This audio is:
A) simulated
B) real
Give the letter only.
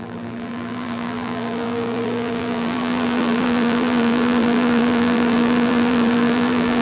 A